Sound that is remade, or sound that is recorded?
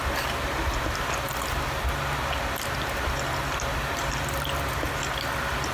recorded